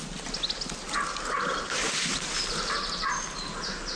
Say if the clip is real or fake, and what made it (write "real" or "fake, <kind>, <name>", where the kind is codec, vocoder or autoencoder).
real